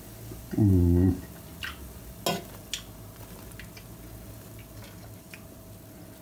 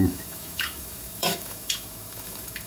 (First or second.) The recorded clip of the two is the first